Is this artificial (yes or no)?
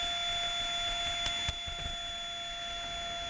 no